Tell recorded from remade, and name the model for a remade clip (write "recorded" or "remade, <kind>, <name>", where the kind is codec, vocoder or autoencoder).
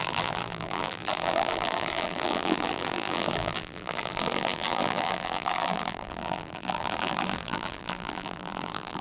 remade, vocoder, BigVGAN v2